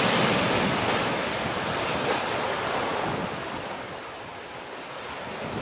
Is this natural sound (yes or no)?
yes